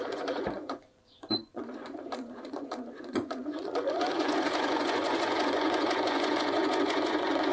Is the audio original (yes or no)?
no